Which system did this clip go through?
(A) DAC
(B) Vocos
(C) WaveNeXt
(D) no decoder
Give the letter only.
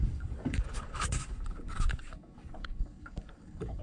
A